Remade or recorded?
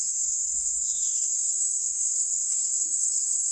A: remade